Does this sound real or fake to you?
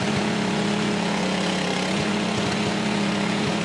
fake